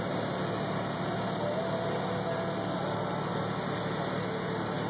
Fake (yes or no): no